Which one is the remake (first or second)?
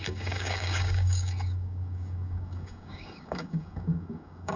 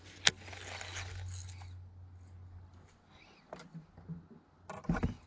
first